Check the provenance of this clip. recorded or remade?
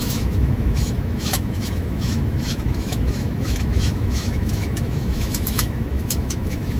remade